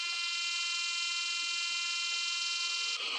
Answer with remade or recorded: recorded